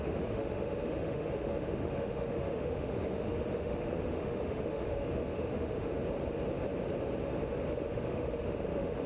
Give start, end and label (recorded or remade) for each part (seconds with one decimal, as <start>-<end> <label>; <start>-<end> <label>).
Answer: 0.0-6.0 remade; 6.0-7.7 recorded; 7.7-9.1 remade